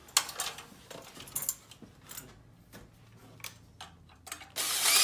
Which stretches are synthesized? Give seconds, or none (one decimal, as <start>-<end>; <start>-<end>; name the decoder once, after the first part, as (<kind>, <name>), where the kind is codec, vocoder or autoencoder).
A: none